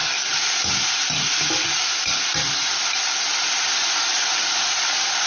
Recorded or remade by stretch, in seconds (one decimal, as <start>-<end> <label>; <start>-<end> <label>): 0.0-5.3 recorded